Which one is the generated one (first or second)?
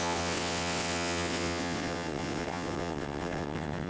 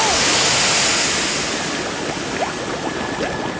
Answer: first